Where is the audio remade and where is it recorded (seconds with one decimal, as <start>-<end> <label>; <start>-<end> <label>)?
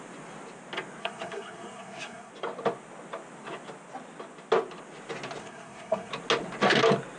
0.0-1.0 recorded; 1.0-2.3 remade; 2.3-5.4 recorded; 5.4-6.1 remade; 6.1-7.2 recorded